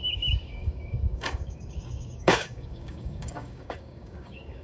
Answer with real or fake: fake